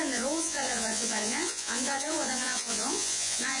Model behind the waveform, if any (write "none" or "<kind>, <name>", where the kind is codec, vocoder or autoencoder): vocoder, Vocos